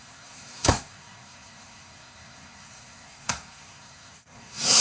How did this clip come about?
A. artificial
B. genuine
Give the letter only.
A